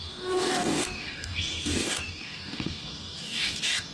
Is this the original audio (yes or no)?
no